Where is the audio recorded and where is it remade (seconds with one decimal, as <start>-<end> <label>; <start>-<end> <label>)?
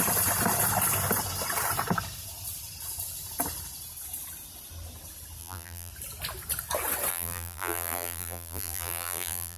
0.0-5.4 recorded; 5.4-5.9 remade; 5.9-7.1 recorded; 7.1-9.6 remade